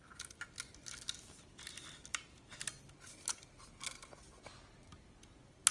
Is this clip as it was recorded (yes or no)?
yes